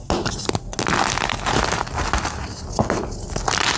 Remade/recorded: recorded